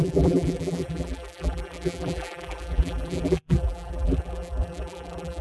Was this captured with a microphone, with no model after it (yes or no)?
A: no